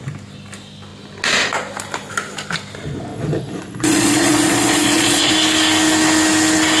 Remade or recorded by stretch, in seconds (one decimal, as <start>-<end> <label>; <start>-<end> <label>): 0.0-3.1 recorded; 3.1-5.3 remade; 5.3-6.8 recorded